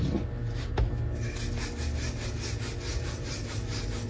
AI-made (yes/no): no